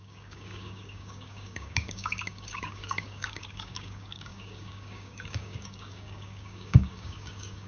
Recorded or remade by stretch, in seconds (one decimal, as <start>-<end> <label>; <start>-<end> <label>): 0.0-7.7 remade